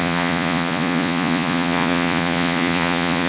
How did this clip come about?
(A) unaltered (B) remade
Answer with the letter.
B